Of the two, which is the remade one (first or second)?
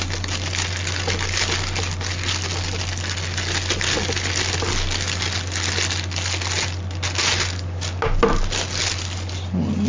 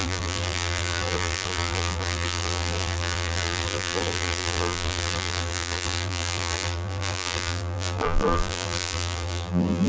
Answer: second